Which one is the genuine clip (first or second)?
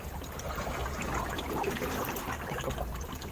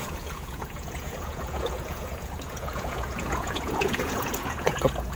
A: first